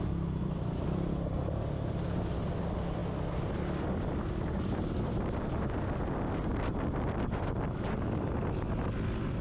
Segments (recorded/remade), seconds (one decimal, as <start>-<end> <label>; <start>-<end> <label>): 0.0-9.4 recorded